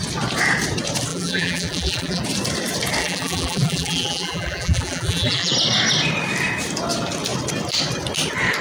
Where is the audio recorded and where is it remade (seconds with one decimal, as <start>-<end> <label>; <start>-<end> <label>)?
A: 0.0-1.1 recorded; 1.1-2.2 remade; 2.2-3.0 recorded; 3.0-5.5 remade; 5.5-8.6 recorded